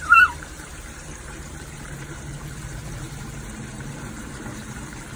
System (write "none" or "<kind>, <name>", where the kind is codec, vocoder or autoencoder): vocoder, BigVGAN v2